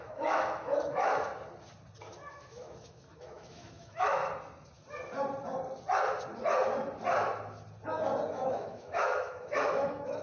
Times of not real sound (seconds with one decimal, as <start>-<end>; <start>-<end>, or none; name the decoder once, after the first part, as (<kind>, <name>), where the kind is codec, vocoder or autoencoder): 0.0-1.3 (autoencoder, DAC-VAE); 2.3-4.2; 8.3-10.2